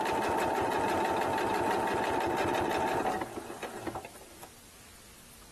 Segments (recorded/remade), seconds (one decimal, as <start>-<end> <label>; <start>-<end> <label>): 0.0-5.5 recorded